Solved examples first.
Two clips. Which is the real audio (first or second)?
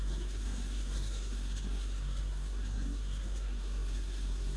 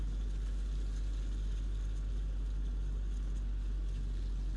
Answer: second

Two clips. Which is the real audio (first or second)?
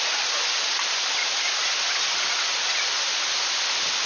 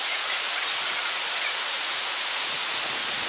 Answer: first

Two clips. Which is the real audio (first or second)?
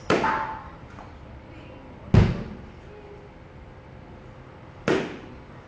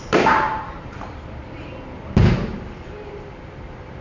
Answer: first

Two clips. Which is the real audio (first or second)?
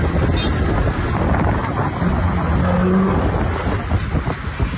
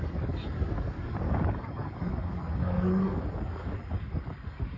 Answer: first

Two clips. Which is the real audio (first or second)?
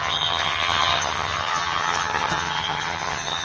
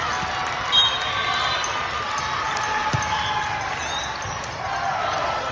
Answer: second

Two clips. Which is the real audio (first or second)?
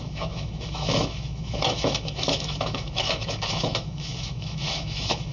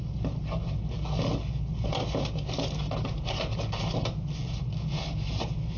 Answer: second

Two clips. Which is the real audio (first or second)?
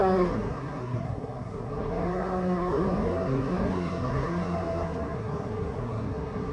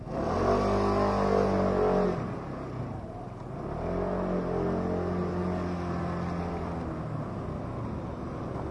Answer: second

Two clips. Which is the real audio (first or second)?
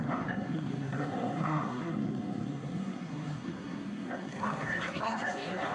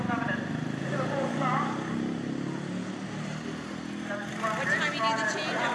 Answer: second